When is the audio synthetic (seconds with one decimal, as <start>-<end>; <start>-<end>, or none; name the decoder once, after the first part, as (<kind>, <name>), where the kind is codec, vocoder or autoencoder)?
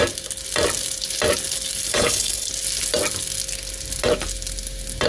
1.9-2.5 (codec, HILCodec)